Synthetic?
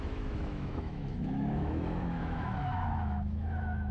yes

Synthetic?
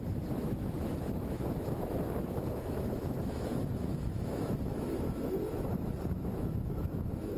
yes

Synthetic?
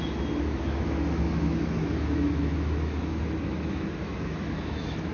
yes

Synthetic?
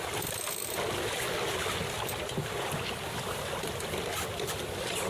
no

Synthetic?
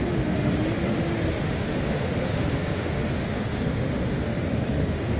yes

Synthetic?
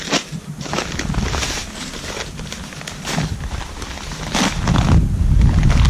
no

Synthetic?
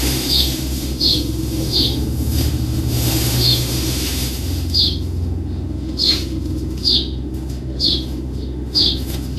yes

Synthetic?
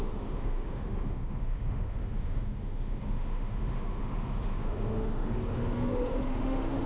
yes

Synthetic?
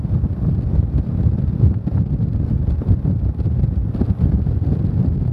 no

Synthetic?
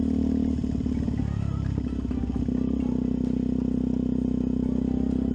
no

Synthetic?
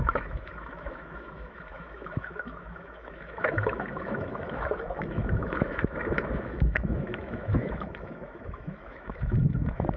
yes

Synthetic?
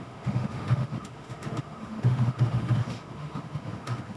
yes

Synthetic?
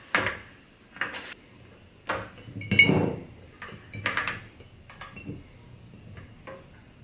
no